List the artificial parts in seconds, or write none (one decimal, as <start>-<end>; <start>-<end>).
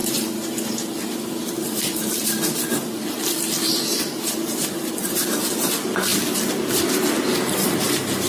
none